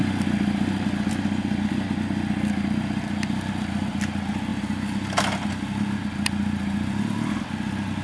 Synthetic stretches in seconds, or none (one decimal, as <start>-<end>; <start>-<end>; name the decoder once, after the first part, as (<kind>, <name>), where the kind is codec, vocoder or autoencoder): none

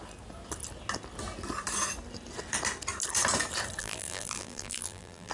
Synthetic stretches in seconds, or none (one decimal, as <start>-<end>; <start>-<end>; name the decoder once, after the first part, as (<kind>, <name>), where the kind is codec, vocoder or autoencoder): 3.8-5.3 (vocoder, BigVGAN v2)

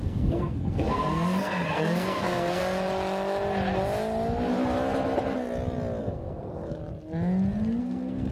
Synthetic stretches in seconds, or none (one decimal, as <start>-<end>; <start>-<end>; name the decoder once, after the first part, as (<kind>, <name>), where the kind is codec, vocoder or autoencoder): 0.0-2.6 (codec, SNAC); 6.0-6.8; 7.8-8.3

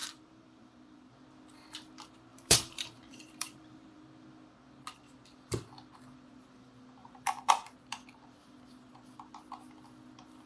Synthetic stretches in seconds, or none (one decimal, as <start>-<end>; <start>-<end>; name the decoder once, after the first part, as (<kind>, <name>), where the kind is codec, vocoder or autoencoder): 0.0-1.1 (vocoder, BigVGAN v2); 2.3-4.0; 7.0-7.5

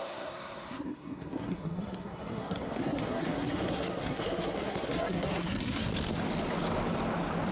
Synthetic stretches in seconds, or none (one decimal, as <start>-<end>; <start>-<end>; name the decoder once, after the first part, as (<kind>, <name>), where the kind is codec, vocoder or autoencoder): 0.0-5.9 (codec, SNAC)